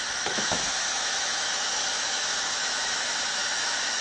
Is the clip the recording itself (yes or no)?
no